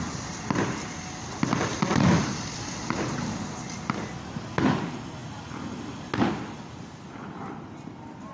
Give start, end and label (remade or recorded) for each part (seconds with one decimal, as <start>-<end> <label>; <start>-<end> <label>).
0.0-8.3 recorded